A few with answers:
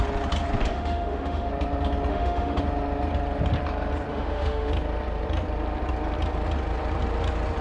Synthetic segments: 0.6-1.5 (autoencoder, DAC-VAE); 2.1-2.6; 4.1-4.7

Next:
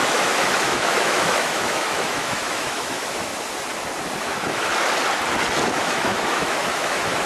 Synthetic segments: 0.0-3.3 (autoencoder, DAC-VAE); 4.2-4.7; 5.7-7.2

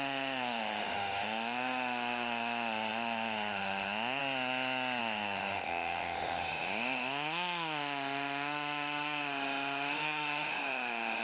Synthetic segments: 0.0-4.2 (autoencoder, DAC-VAE); 5.0-11.2

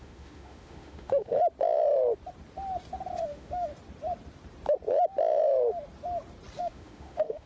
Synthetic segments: 0.0-1.4 (autoencoder, DAC-VAE); 3.2-3.7; 6.6-7.5

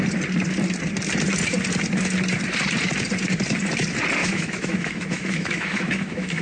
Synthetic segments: 4.2-6.4 (autoencoder, DAC-VAE)

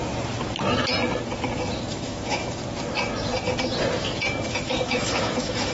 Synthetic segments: 1.9-2.6 (autoencoder, DAC-VAE); 4.5-5.7